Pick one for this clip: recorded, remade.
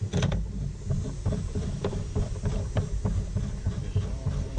remade